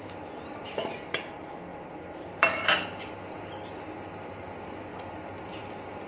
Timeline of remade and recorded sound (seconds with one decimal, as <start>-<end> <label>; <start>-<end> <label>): 0.0-6.1 recorded